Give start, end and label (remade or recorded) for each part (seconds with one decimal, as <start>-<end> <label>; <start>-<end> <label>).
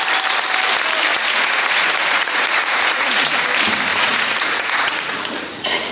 0.0-1.1 recorded; 1.1-3.4 remade; 3.4-3.9 recorded; 3.9-5.9 remade